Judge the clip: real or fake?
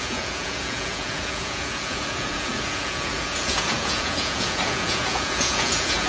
fake